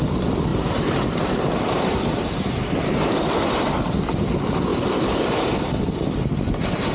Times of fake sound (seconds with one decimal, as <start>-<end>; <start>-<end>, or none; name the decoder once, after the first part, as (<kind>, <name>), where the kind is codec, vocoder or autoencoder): 0.5-3.4 (vocoder, BigVGAN v2)

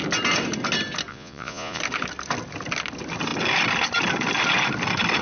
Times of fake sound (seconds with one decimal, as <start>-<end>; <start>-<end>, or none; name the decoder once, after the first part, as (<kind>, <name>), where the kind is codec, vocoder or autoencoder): 1.1-1.8 (vocoder, Vocos)